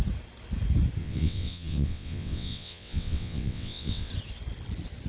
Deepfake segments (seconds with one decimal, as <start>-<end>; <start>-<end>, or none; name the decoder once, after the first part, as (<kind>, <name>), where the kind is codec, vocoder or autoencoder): 1.0-4.1 (vocoder, WaveNeXt)

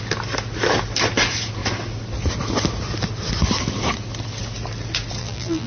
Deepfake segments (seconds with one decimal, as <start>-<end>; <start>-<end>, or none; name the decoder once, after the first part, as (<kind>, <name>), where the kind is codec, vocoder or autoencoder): 5.2-5.7 (vocoder, BigVGAN v2)

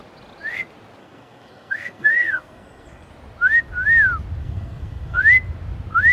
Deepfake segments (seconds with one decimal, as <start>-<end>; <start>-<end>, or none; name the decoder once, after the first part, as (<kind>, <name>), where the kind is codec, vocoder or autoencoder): 1.0-3.1 (codec, SNAC); 4.4-5.2

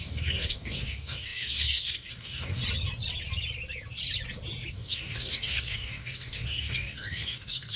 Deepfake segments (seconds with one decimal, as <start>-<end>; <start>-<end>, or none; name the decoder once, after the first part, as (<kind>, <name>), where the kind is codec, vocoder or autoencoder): 0.0-2.6 (codec, DAC); 4.7-7.8